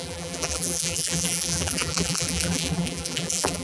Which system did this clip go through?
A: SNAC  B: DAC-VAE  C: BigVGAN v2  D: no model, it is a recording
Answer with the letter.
C